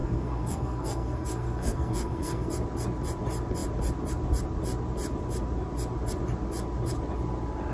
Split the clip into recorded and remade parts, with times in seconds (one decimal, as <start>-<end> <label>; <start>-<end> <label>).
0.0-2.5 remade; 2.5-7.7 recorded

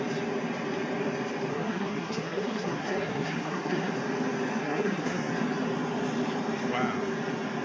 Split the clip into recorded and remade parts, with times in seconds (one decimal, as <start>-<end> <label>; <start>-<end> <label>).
0.0-1.5 recorded; 1.5-3.9 remade; 3.9-4.6 recorded; 4.6-5.3 remade; 5.3-7.6 recorded

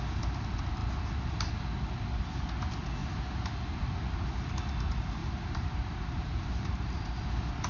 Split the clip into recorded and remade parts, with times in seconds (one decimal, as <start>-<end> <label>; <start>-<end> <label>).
0.0-3.0 recorded; 3.0-3.5 remade; 3.5-5.2 recorded; 5.2-7.2 remade; 7.2-7.7 recorded